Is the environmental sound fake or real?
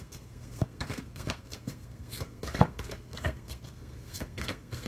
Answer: fake